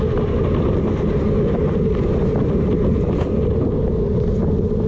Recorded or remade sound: recorded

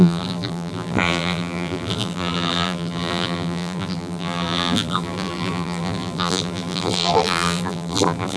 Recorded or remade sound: remade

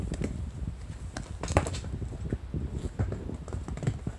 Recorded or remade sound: recorded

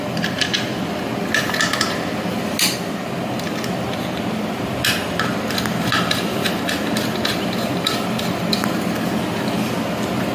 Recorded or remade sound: recorded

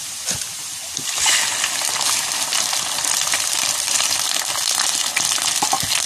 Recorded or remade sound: recorded